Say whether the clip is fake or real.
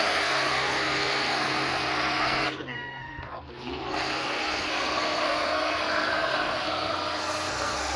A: fake